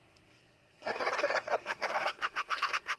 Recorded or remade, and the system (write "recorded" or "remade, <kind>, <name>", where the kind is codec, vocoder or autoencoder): remade, codec, SNAC